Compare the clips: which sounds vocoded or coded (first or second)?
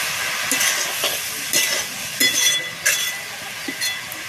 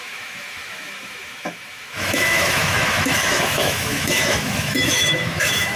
second